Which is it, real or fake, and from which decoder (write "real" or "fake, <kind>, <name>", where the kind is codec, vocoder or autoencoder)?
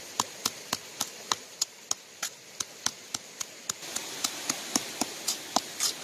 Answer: fake, vocoder, BigVGAN v2